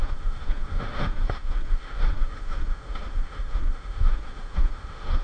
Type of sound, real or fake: fake